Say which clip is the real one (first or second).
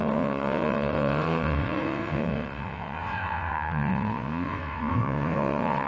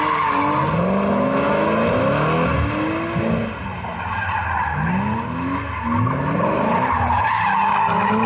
second